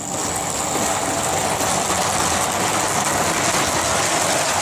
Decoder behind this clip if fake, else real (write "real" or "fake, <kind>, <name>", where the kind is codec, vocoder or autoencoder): real